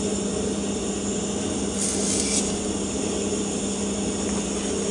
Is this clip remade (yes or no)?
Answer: no